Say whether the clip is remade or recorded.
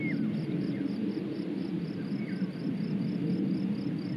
recorded